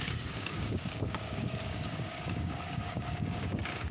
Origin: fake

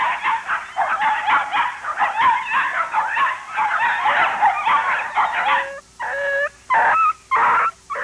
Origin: real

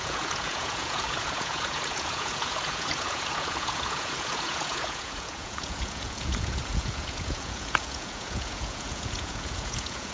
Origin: fake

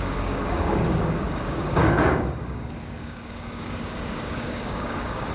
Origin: fake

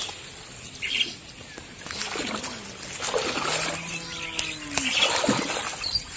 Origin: real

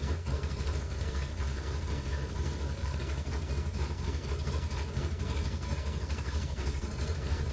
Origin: fake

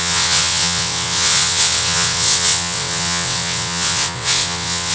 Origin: fake